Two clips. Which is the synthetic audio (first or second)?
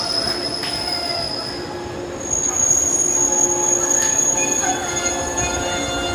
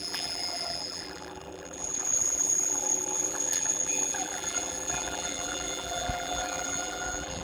second